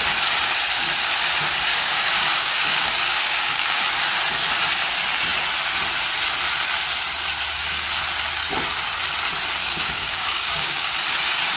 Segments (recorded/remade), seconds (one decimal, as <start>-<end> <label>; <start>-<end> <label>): 0.0-1.7 recorded; 1.7-3.8 remade; 3.8-9.6 recorded; 9.6-10.9 remade; 10.9-11.6 recorded